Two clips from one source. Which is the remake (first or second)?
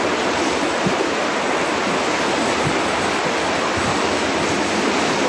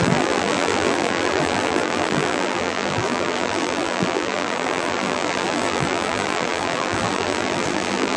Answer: second